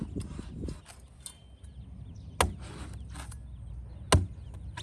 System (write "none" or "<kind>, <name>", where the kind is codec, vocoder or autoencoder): none